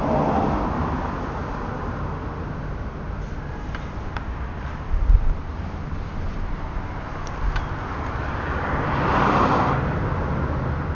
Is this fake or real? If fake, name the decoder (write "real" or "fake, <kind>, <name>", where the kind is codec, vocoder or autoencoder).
real